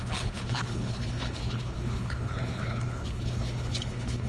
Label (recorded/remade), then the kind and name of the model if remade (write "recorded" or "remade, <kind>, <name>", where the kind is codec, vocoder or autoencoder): remade, codec, HILCodec